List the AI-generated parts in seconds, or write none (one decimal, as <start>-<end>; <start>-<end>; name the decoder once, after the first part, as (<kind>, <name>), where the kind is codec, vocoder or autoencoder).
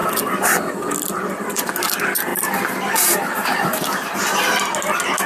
0.0-1.6 (vocoder, BigVGAN v2); 2.3-4.4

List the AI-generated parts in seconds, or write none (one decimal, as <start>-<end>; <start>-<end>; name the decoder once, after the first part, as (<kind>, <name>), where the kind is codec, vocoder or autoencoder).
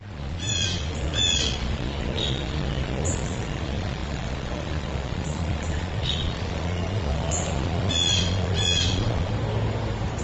0.0-9.3 (vocoder, Vocos)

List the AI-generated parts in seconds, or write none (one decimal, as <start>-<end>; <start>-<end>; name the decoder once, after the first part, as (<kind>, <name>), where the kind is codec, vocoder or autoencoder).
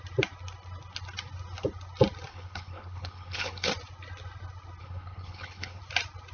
2.3-3.7 (codec, HILCodec); 4.8-5.8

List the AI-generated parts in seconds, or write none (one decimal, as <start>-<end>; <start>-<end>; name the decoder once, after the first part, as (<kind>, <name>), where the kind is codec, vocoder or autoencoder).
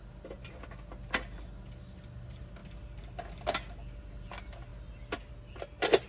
none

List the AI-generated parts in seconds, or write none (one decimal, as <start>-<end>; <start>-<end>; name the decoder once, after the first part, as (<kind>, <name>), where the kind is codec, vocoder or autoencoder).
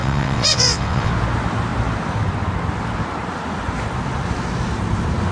0.0-1.1 (vocoder, WaveNeXt)